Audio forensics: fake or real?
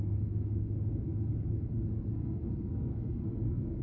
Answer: fake